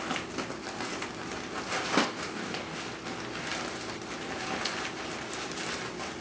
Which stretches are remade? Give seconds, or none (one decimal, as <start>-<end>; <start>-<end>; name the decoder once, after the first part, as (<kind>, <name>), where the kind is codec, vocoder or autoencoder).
2.0-2.8 (codec, DAC)